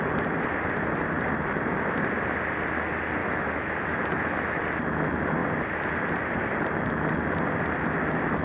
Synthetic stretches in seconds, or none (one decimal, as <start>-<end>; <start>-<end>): 3.2-4.6